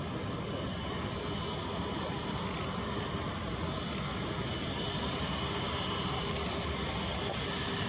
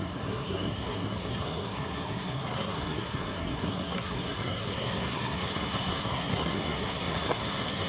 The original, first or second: first